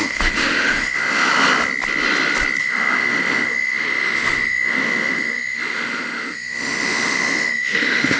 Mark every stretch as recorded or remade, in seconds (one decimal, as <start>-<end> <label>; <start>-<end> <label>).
0.0-1.3 remade; 1.3-2.6 recorded; 2.6-8.2 remade